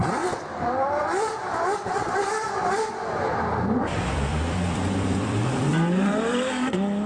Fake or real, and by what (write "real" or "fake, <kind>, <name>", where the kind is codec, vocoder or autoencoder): fake, vocoder, BigVGAN v2